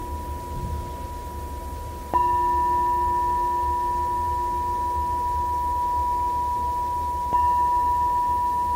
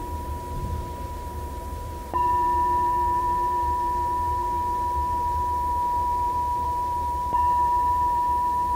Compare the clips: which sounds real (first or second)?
first